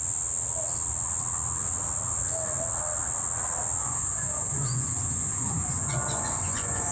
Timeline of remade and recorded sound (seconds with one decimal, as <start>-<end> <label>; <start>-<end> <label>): 0.0-3.8 recorded; 3.8-6.9 remade